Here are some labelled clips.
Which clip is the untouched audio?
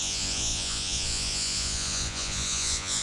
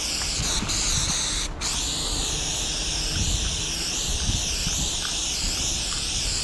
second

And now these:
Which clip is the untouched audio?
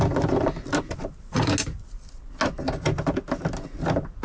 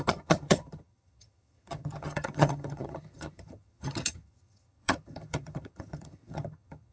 first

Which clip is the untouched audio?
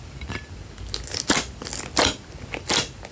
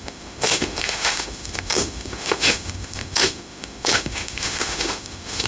first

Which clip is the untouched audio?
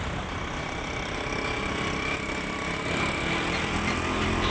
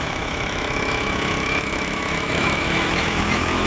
first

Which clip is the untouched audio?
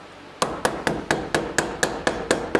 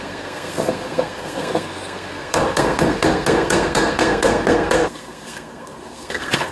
first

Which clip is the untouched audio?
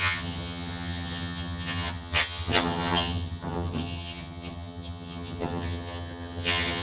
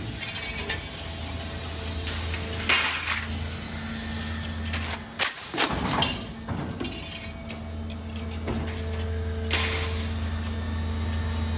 second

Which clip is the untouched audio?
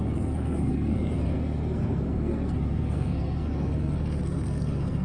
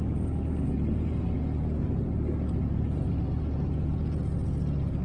second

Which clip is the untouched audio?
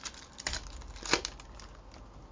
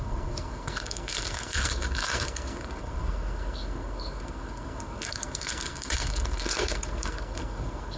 first